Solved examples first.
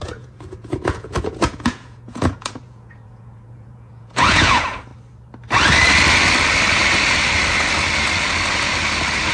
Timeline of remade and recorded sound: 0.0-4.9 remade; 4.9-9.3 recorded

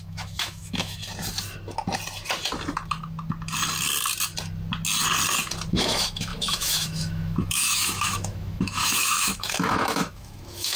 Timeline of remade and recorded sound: 0.0-1.0 remade; 1.0-5.7 recorded; 5.7-10.8 remade

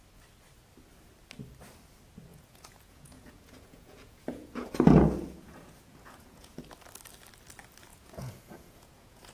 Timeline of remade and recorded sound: 0.0-2.3 recorded; 2.3-6.6 remade; 6.6-7.9 recorded; 7.9-9.3 remade

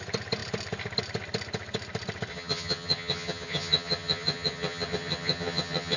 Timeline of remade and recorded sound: 0.0-2.3 recorded; 2.3-6.0 remade

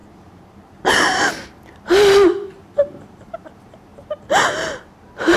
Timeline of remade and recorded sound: 0.0-3.9 remade; 3.9-4.5 recorded; 4.5-5.4 remade

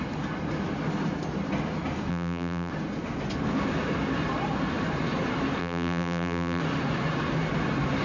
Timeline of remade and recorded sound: 0.0-2.1 recorded; 2.1-2.7 remade; 2.7-5.6 recorded; 5.6-6.6 remade; 6.6-8.0 recorded